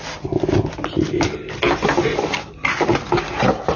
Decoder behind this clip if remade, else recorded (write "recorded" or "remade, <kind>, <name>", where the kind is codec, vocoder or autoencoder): recorded